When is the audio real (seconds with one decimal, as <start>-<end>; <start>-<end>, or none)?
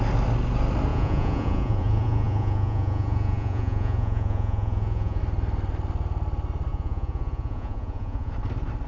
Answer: 0.0-0.9; 5.2-6.7; 8.3-8.9